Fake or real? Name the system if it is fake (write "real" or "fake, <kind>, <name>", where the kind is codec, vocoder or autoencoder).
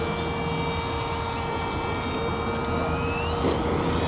real